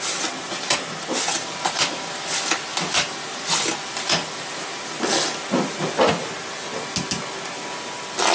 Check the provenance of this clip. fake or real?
real